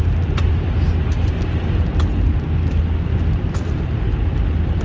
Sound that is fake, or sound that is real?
real